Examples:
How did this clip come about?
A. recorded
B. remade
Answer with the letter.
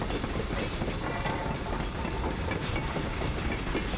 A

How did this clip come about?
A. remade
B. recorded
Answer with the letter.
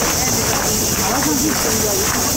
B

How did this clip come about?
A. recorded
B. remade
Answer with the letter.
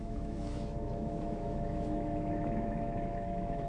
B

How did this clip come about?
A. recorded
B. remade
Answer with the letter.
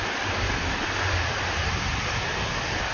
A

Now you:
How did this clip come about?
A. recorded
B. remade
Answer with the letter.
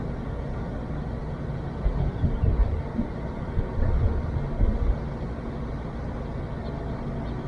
A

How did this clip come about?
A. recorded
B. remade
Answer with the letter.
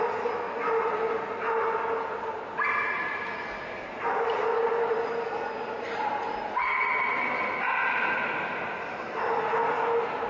A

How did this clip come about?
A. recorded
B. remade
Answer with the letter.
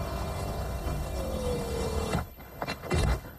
B